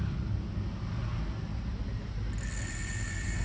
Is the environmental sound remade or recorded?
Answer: recorded